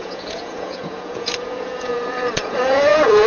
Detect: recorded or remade remade